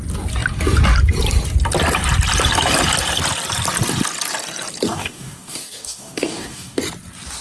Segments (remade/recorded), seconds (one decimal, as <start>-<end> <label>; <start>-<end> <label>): 0.0-4.9 recorded; 4.9-6.8 remade; 6.8-7.4 recorded